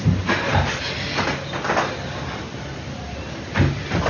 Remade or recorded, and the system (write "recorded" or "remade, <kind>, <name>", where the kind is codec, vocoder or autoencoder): recorded